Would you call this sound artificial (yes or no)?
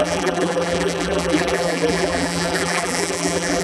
yes